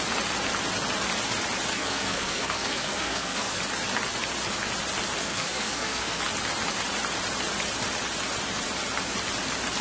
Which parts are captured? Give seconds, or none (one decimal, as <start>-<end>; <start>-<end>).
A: 0.0-1.7; 3.6-5.2; 6.2-9.8